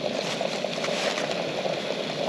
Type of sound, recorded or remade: recorded